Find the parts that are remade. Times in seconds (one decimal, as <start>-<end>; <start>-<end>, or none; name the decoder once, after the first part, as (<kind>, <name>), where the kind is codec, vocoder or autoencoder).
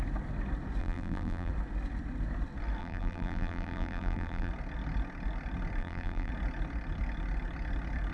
0.8-1.5 (vocoder, BigVGAN v2); 2.8-4.5; 5.8-6.3